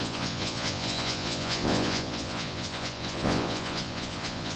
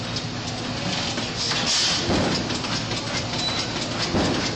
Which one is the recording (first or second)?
second